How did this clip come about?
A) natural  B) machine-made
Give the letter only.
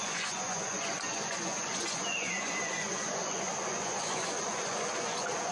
B